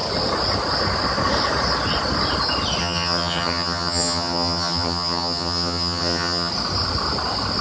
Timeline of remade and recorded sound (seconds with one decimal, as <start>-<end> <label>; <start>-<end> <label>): 0.0-2.8 recorded; 2.8-6.5 remade; 6.5-7.6 recorded